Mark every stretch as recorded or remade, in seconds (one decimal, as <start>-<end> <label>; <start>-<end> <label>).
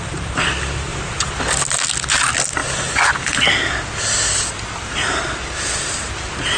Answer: 0.0-0.9 recorded; 0.9-1.4 remade; 1.4-6.6 recorded